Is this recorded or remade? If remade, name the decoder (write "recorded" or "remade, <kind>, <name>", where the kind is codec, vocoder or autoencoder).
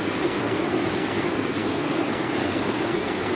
remade, codec, SNAC